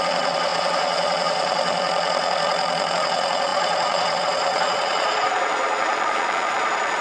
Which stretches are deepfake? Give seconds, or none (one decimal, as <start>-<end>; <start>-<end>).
0.0-7.0